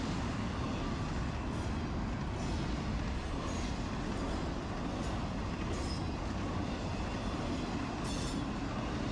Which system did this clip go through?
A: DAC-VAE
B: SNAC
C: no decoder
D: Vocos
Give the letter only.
C